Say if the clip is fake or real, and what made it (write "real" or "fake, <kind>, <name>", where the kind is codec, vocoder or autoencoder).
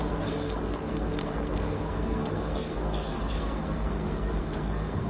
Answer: fake, codec, SNAC